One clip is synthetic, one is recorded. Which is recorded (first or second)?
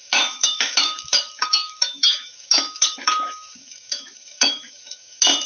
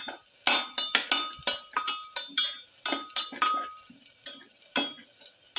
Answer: second